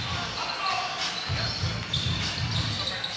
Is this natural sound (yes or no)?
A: yes